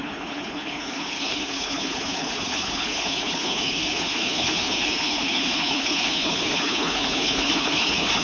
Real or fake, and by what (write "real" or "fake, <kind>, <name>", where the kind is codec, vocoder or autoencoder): fake, codec, HILCodec